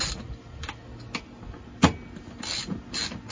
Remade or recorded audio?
recorded